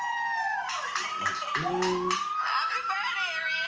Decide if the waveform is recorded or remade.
recorded